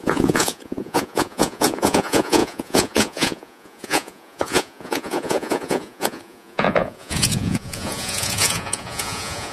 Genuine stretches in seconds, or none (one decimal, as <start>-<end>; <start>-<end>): none